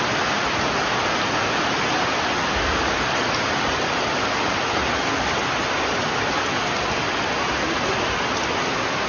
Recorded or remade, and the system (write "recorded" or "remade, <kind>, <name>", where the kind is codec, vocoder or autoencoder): recorded